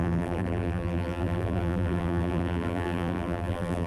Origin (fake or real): fake